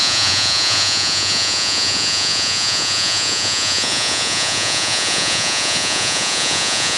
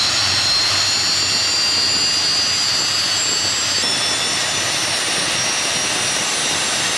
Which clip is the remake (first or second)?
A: first